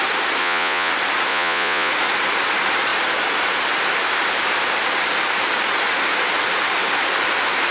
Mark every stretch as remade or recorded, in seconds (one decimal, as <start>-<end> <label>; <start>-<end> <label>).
0.0-0.4 recorded; 0.4-0.9 remade; 0.9-1.3 recorded; 1.3-1.9 remade; 1.9-7.7 recorded